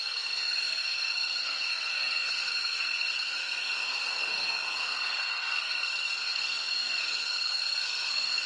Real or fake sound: fake